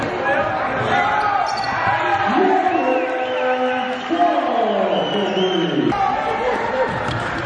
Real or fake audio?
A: real